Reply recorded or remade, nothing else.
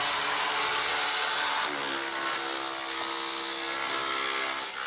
recorded